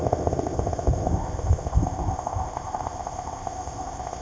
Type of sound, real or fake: fake